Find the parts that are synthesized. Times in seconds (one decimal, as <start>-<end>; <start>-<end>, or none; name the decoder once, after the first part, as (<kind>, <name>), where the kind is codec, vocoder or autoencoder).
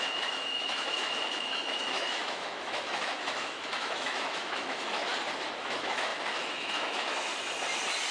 0.0-5.1 (autoencoder, DAC-VAE); 5.6-7.3